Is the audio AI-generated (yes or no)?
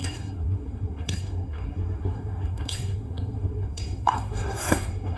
yes